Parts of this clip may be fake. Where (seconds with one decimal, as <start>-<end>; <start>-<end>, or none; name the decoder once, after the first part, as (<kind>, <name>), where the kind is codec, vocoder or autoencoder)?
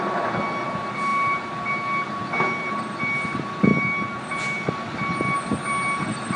none